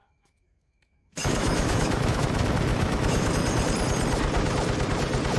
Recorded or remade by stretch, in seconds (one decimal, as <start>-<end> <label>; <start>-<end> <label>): 0.0-2.2 remade; 2.2-2.7 recorded; 2.7-3.3 remade; 3.3-5.4 recorded